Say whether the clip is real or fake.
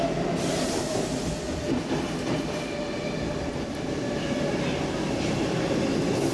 real